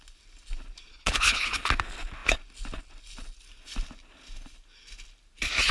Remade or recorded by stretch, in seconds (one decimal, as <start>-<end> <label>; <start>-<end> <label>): 0.0-0.9 recorded; 0.9-1.7 remade; 1.7-5.7 recorded